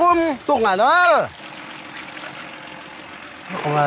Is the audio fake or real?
real